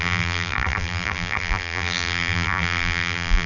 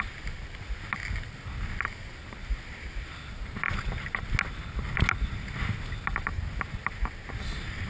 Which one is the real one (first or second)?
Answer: second